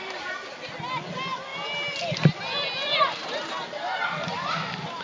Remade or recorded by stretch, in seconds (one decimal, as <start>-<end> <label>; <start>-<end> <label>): 0.0-5.0 recorded